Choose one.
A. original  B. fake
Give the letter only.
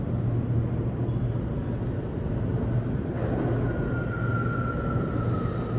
A